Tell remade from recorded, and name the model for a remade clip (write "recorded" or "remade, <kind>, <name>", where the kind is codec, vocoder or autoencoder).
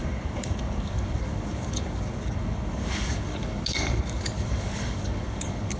remade, codec, DAC